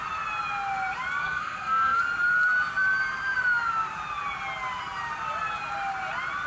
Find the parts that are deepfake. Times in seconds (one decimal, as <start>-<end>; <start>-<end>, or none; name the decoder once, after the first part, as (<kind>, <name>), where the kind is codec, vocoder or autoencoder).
1.2-2.0 (codec, SNAC)